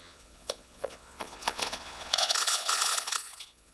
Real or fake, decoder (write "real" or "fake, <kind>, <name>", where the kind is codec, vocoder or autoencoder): fake, vocoder, Vocos